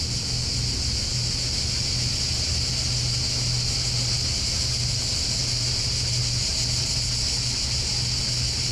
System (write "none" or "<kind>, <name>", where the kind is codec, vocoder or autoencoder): none